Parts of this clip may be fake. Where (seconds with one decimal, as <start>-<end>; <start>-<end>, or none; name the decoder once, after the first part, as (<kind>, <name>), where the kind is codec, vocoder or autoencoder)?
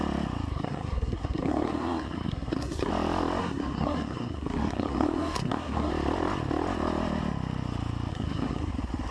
0.5-2.9 (codec, SNAC); 3.4-5.9; 8.1-8.7